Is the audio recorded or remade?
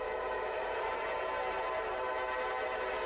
remade